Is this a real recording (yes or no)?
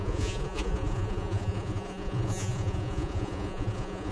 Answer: no